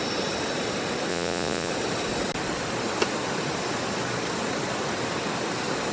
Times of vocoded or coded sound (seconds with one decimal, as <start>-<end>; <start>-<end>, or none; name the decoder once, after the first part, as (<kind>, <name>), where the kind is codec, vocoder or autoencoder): 1.1-1.7 (vocoder, Vocos)